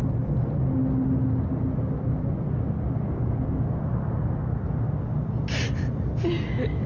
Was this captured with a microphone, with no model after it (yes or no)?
yes